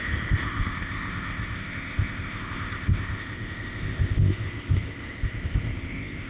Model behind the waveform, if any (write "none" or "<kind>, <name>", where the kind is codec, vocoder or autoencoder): codec, ZipCodec